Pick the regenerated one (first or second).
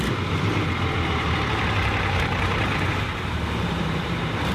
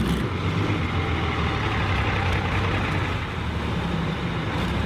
first